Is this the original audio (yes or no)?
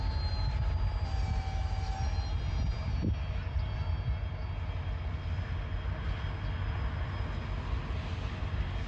yes